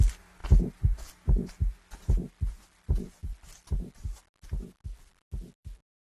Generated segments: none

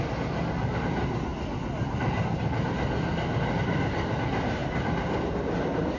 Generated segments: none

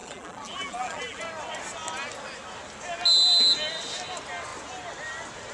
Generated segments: 0.0-1.2 (vocoder, BigVGAN v2)